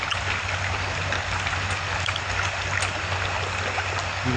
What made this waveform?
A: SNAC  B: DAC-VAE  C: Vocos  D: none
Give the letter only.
D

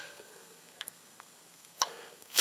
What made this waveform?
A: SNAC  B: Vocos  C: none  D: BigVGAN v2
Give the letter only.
A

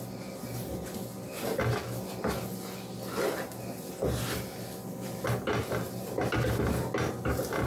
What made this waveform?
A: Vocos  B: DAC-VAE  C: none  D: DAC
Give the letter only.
C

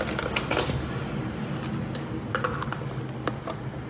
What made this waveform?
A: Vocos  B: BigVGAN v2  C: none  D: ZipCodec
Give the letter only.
C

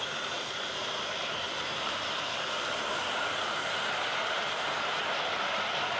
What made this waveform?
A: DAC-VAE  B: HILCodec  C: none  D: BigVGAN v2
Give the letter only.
D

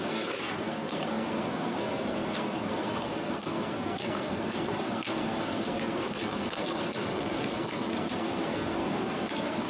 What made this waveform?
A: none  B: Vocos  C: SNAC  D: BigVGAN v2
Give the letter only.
C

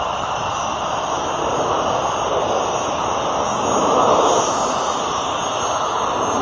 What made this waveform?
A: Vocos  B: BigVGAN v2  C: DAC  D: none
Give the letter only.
D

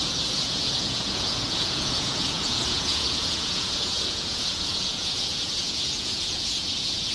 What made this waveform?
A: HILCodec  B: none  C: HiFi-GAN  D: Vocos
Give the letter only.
D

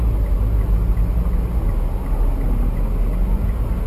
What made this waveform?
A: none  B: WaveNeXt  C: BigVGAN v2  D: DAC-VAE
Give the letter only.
A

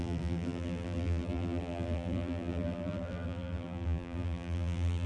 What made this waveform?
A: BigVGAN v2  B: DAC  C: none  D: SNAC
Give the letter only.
A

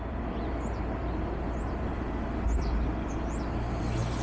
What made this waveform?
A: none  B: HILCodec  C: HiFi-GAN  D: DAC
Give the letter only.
A